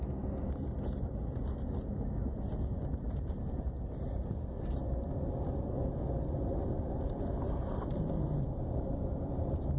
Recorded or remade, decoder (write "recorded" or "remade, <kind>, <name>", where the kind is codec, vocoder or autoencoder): recorded